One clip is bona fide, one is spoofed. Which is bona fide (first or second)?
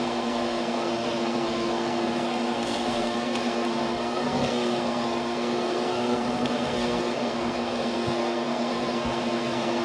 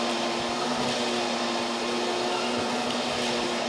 second